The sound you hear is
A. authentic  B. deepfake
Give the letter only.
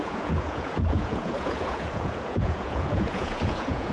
B